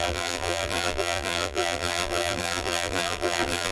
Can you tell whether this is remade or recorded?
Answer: remade